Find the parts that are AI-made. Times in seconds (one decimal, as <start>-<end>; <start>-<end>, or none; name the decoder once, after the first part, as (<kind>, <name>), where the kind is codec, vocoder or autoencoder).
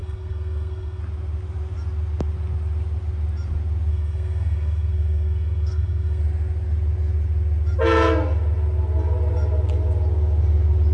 0.0-1.0 (codec, SNAC); 3.9-6.2